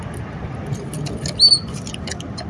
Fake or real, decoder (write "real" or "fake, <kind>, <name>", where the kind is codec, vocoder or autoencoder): real